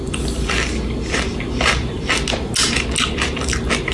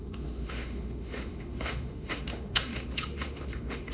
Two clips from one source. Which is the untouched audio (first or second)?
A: first